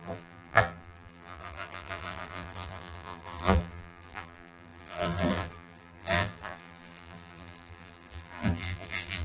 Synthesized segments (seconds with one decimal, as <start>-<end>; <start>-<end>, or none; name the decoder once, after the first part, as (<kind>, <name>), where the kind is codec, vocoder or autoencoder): 0.0-9.2 (vocoder, BigVGAN v2)